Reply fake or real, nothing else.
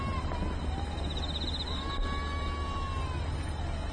real